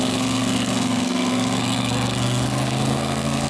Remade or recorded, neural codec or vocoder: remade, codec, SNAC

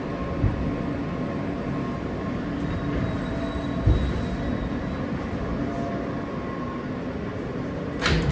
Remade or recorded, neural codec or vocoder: recorded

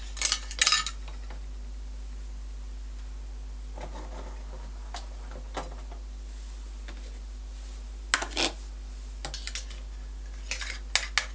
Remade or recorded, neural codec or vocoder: recorded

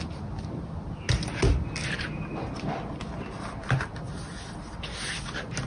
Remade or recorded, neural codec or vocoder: recorded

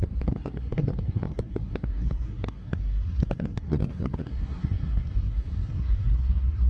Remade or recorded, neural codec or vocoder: remade, codec, SNAC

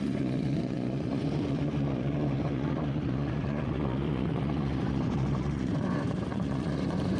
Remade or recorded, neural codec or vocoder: remade, vocoder, Vocos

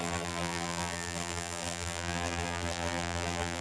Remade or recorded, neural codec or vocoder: remade, vocoder, BigVGAN v2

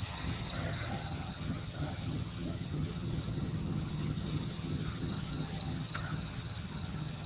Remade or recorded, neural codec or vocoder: remade, vocoder, HiFi-GAN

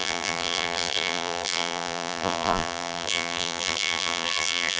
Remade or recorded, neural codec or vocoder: remade, vocoder, BigVGAN v2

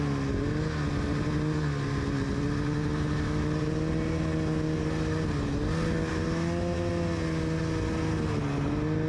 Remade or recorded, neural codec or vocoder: recorded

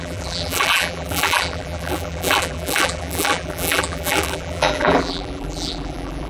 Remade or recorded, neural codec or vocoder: remade, vocoder, BigVGAN v2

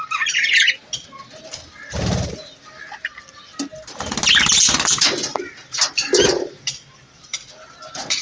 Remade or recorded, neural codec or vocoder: recorded